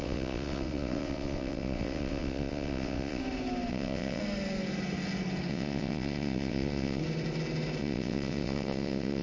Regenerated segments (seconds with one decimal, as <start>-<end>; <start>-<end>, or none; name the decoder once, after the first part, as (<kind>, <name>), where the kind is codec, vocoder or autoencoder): 0.0-3.2 (vocoder, WaveNeXt); 3.7-4.2; 5.5-7.0; 7.8-9.2